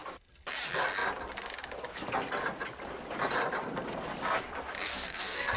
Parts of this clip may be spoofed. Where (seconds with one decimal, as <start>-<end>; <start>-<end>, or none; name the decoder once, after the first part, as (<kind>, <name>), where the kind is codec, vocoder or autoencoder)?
4.9-5.6 (codec, SNAC)